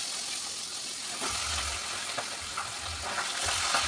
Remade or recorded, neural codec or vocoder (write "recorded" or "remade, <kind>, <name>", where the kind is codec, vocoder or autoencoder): recorded